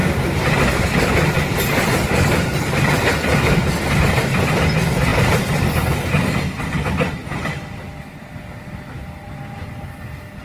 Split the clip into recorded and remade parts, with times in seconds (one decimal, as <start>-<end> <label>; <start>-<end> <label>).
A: 0.0-10.4 recorded